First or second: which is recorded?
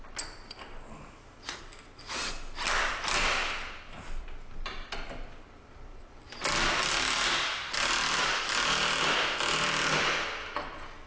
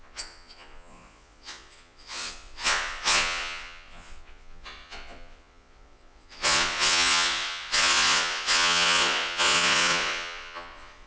first